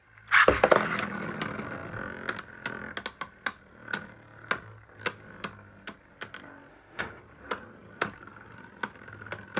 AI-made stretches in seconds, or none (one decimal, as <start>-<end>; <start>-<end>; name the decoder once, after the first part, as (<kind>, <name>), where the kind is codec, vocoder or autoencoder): 6.7-7.2 (autoencoder, DAC-VAE)